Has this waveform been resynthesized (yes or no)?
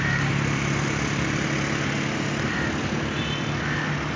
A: no